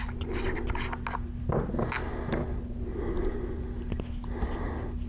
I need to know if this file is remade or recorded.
recorded